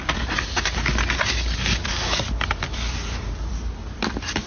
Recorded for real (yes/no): yes